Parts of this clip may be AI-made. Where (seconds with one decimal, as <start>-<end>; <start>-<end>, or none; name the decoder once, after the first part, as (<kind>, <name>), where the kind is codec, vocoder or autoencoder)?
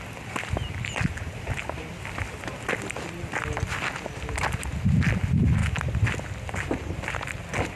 none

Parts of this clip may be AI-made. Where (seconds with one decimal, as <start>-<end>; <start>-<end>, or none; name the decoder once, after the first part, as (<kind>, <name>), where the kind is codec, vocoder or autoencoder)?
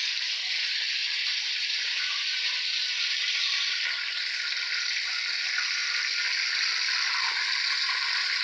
none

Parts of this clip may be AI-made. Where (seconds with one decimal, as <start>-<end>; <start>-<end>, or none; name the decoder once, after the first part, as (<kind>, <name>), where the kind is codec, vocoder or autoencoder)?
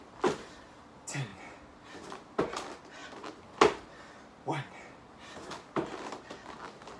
none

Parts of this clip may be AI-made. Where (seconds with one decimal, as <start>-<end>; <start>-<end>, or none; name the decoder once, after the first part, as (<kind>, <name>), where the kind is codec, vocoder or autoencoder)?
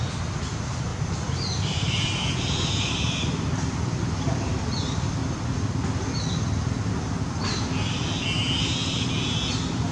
0.9-4.6 (vocoder, BigVGAN v2); 5.2-6.0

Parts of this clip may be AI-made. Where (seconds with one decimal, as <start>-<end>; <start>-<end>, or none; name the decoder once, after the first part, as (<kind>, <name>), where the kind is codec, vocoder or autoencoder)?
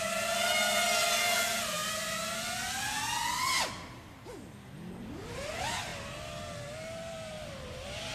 none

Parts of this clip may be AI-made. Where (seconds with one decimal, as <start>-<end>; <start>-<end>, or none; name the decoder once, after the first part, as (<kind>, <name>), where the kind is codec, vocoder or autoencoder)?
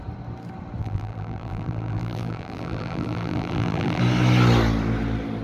0.8-4.0 (vocoder, BigVGAN v2)